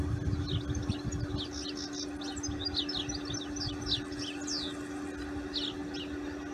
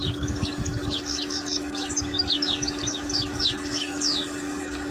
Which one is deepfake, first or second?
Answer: second